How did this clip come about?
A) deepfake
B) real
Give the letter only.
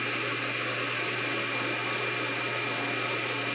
B